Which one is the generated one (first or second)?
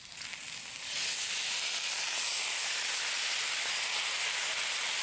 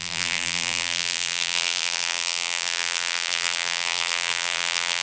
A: second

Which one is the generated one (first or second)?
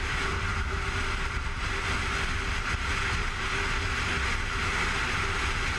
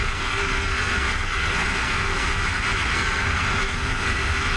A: second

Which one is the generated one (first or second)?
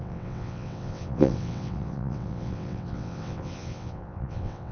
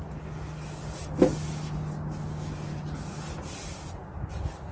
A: first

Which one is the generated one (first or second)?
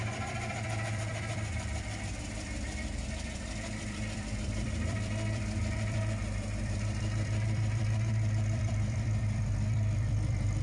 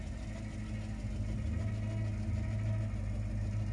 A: first